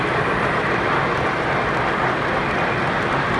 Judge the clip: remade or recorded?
recorded